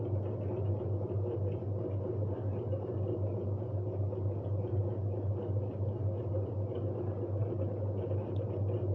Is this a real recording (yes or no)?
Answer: yes